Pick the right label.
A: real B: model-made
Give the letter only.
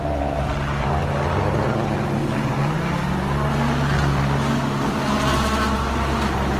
A